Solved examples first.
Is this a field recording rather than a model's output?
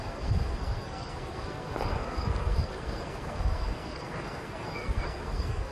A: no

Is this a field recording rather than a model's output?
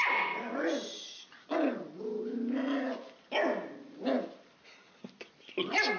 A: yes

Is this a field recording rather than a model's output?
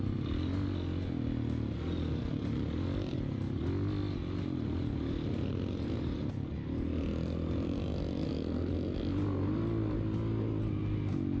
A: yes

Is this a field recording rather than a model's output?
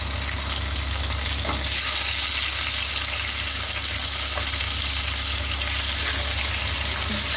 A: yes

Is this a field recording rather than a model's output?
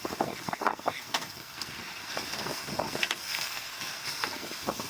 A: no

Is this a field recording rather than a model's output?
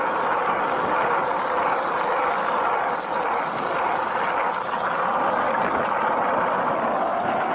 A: yes